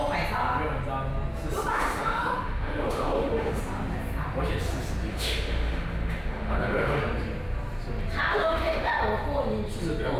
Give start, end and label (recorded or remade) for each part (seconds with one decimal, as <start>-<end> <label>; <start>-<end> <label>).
0.0-1.7 recorded; 1.7-3.6 remade; 3.6-5.1 recorded; 5.1-7.0 remade; 7.0-8.3 recorded; 8.3-9.0 remade; 9.0-10.2 recorded